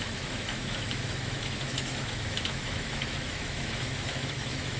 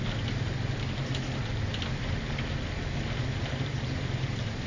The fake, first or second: first